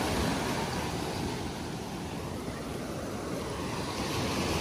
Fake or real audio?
real